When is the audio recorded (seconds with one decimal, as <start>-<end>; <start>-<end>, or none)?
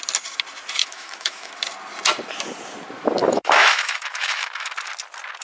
0.0-0.8; 1.5-3.2; 4.7-5.4